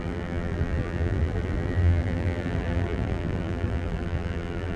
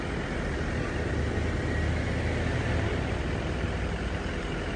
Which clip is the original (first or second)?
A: second